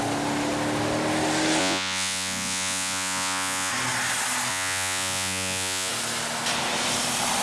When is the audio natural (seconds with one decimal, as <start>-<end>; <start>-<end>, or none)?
0.0-1.6; 3.7-4.5; 5.9-7.4